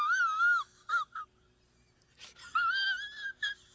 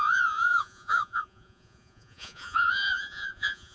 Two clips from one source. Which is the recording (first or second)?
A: first